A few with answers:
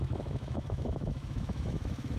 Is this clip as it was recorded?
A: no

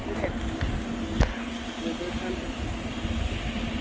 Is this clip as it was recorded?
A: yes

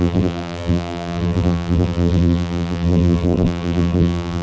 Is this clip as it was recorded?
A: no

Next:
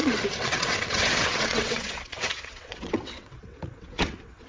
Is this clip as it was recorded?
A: no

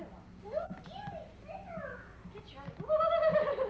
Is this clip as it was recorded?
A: yes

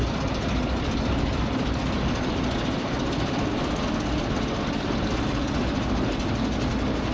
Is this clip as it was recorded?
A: yes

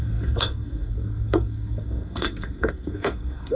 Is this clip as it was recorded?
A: no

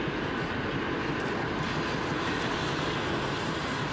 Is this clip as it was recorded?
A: yes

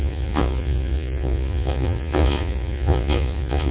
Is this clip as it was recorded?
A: no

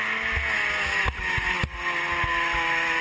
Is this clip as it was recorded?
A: yes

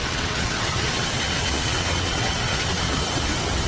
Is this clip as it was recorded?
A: no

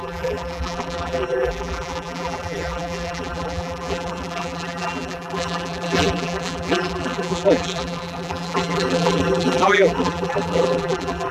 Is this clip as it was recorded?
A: no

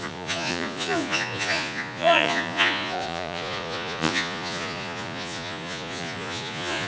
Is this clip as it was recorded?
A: no